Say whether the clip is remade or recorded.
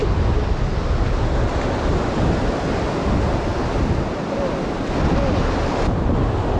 recorded